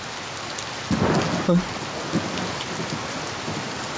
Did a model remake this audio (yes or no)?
no